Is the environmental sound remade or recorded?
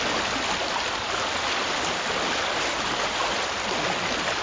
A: recorded